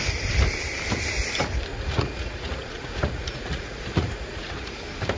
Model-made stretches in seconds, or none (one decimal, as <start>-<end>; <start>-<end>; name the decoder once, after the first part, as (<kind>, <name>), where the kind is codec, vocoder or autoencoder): 1.7-4.8 (vocoder, Vocos)